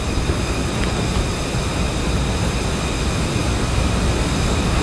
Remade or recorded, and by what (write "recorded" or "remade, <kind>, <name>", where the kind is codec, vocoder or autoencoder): recorded